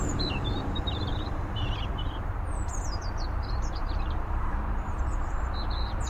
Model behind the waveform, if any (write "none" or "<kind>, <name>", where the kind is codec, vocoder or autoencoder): vocoder, BigVGAN v2